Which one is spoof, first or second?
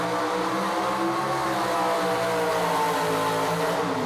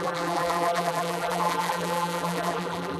second